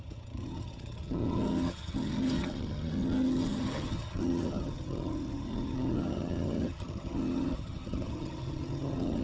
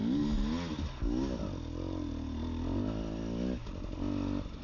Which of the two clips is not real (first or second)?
first